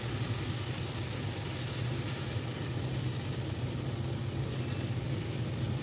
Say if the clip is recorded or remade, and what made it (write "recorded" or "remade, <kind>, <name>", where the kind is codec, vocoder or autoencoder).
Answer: recorded